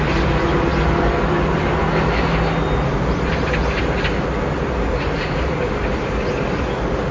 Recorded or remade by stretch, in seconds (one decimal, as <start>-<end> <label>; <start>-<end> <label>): 0.0-7.1 recorded